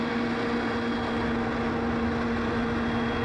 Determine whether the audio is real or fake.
real